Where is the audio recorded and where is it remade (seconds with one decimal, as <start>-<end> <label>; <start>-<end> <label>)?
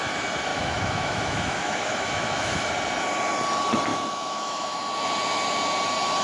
0.0-0.5 recorded; 0.5-2.7 remade; 2.7-3.9 recorded; 3.9-4.8 remade; 4.8-6.2 recorded